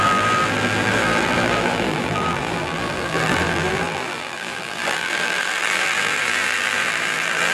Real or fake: fake